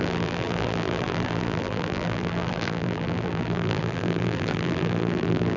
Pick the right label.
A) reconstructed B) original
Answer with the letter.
A